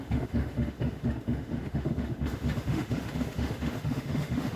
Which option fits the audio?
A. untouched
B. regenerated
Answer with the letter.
B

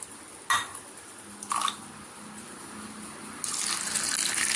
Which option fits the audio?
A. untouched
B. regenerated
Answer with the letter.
A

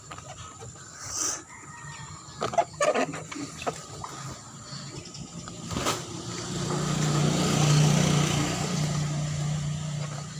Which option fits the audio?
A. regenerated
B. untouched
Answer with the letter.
B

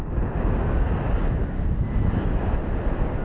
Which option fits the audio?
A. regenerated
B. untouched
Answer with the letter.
B